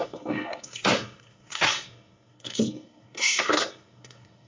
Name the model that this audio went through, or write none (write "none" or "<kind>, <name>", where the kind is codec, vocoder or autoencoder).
codec, SNAC